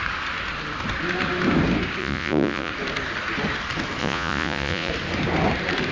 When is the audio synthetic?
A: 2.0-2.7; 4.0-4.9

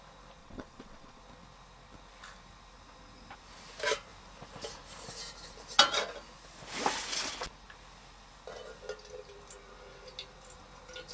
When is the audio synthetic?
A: 0.4-1.2

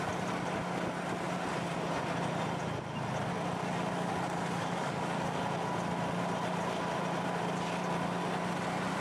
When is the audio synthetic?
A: 3.6-5.4